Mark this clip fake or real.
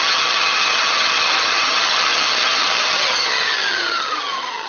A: fake